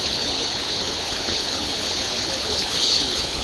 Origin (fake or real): fake